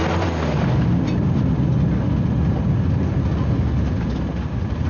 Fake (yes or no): no